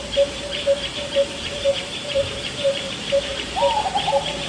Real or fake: fake